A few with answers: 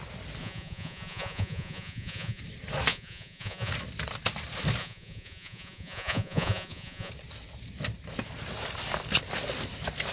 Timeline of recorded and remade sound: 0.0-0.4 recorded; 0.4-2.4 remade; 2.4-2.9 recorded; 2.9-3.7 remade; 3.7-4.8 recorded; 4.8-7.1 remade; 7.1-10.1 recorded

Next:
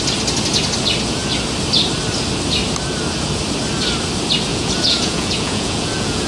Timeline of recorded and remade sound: 0.0-4.5 recorded; 4.5-6.3 remade

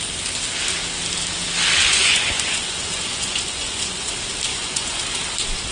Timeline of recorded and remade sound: 0.0-1.8 recorded; 1.8-4.1 remade; 4.1-4.5 recorded; 4.5-5.0 remade; 5.0-5.7 recorded

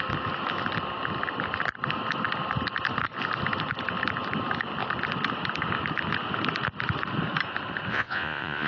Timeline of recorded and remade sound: 0.0-7.9 recorded; 7.9-8.7 remade

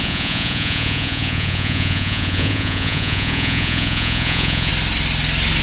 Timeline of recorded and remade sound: 0.0-4.7 remade; 4.7-5.6 recorded

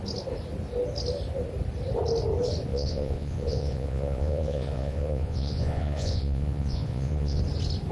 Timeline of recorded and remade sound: 0.0-2.7 recorded; 2.7-7.4 remade; 7.4-7.9 recorded

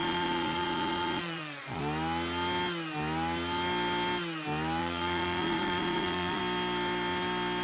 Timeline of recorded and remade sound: 0.0-1.8 remade; 1.8-4.8 recorded; 4.8-6.4 remade; 6.4-7.6 recorded

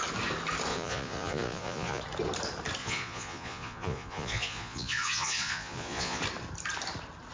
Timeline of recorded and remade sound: 0.0-0.7 recorded; 0.7-2.0 remade; 2.0-2.8 recorded; 2.8-6.2 remade; 6.2-7.3 recorded